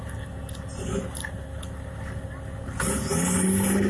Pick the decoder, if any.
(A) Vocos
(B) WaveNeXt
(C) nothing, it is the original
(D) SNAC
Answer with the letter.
C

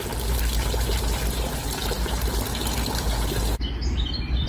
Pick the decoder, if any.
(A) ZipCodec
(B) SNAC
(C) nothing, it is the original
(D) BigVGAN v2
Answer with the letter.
C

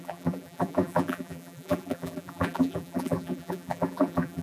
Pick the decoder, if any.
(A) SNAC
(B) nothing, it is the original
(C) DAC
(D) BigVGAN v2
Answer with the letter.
D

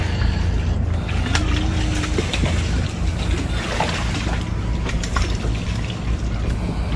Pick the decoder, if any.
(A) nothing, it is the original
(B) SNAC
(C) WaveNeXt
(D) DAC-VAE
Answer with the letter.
A